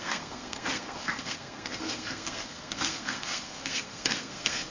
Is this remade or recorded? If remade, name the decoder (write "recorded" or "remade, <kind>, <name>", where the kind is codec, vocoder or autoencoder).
remade, codec, SNAC